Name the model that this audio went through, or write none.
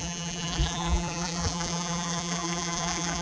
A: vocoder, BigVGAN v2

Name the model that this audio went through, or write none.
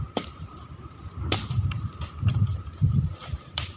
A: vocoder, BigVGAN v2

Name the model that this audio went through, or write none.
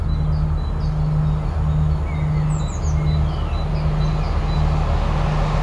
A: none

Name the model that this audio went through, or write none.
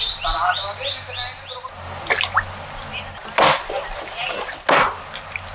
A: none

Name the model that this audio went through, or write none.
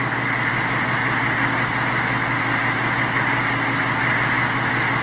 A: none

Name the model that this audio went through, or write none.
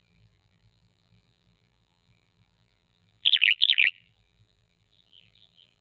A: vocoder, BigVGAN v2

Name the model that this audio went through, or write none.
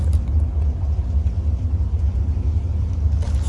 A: none